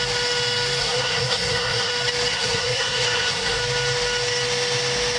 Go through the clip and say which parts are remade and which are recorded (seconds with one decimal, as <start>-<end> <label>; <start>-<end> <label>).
0.0-0.8 recorded; 0.8-1.9 remade; 1.9-2.3 recorded; 2.3-3.6 remade; 3.6-5.2 recorded